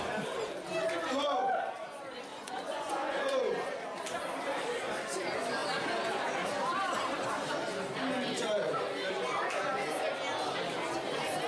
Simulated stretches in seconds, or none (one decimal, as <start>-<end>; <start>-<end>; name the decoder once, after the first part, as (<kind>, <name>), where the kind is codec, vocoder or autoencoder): 2.3-3.7 (vocoder, Vocos)